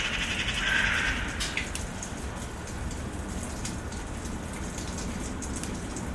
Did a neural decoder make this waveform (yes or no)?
no